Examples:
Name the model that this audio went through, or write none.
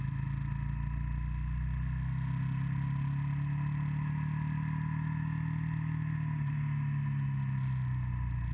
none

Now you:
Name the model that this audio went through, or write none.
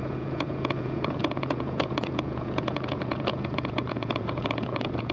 vocoder, Vocos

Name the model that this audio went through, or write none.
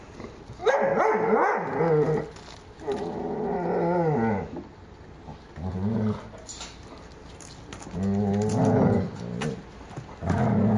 none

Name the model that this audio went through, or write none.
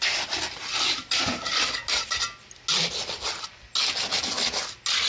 none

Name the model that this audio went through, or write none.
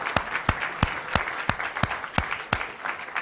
none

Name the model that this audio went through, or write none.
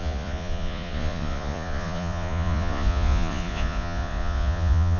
vocoder, Vocos